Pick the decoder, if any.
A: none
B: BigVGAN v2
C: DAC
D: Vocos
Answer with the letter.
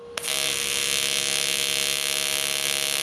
A